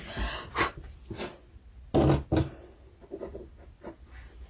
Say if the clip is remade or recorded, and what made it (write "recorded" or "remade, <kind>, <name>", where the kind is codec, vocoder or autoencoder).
recorded